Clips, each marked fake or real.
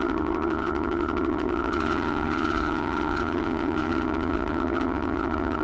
fake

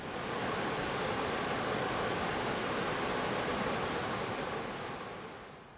real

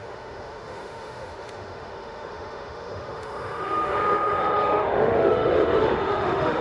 fake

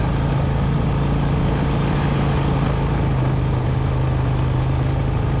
real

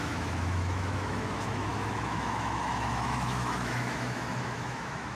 fake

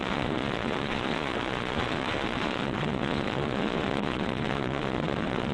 fake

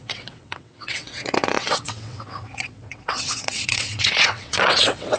fake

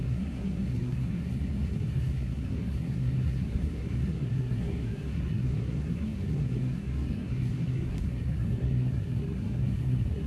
fake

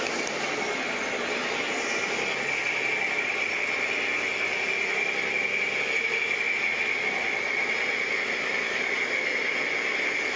real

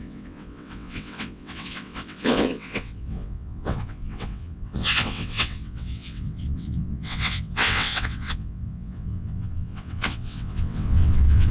fake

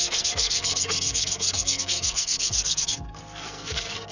fake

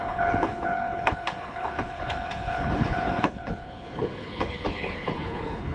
fake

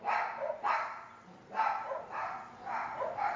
real